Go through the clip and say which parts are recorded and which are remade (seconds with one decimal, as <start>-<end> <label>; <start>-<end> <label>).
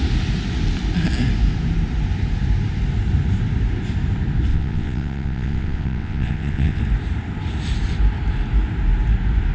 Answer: 0.0-4.5 recorded; 4.5-6.8 remade; 6.8-9.5 recorded